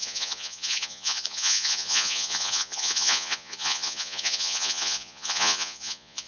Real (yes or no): no